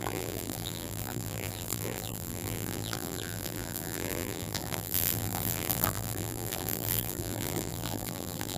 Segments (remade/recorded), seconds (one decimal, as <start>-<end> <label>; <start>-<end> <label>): 0.0-8.6 remade